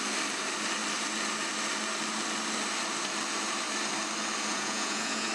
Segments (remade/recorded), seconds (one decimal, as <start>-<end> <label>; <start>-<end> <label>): 0.0-4.5 recorded; 4.5-5.3 remade